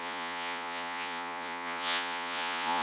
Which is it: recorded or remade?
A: remade